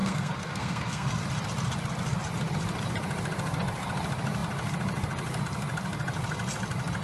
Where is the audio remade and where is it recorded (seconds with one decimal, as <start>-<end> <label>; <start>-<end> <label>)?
0.0-1.2 remade; 1.2-7.0 recorded